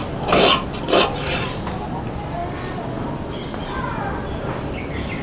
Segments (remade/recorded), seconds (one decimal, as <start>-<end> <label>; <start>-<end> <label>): 0.0-5.2 recorded